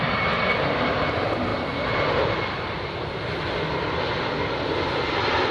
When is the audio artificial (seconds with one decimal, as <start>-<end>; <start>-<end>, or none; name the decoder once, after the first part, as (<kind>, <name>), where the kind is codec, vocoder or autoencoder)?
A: none